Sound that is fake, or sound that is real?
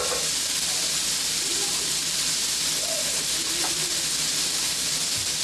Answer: real